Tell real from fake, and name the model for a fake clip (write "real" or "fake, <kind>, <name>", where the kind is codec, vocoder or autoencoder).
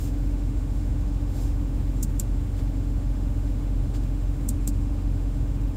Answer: fake, autoencoder, DAC-VAE